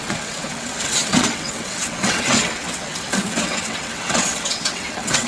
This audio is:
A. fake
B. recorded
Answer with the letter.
A